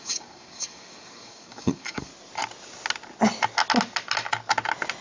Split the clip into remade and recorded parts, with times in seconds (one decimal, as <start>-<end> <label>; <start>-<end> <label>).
0.0-2.1 remade; 2.1-5.0 recorded